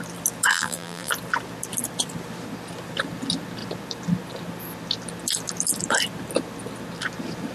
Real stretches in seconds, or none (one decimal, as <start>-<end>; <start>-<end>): 0.0-0.5; 1.1-7.5